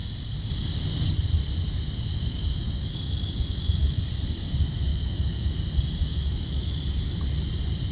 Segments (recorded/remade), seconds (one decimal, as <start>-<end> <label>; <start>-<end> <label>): 0.0-2.1 recorded; 2.1-4.0 remade; 4.0-4.9 recorded; 4.9-5.5 remade; 5.5-6.0 recorded; 6.0-6.8 remade; 6.8-7.9 recorded